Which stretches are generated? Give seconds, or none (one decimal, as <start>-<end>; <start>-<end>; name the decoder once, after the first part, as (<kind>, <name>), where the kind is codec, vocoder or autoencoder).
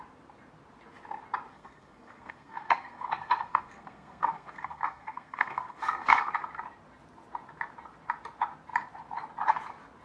1.5-6.3 (codec, SNAC)